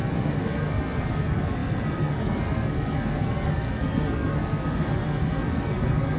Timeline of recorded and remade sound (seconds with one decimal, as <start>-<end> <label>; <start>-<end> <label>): 0.0-6.2 remade